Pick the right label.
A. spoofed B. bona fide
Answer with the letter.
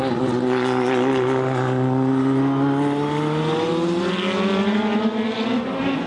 B